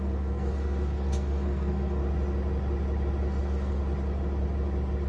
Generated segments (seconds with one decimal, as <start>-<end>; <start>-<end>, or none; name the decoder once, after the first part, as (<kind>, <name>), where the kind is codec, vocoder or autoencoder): 0.0-2.0 (codec, SNAC); 3.4-3.8